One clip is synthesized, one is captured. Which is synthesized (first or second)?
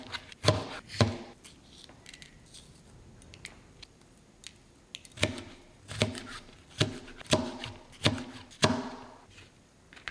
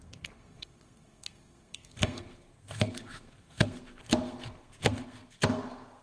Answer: second